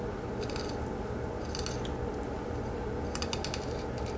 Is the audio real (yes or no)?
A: yes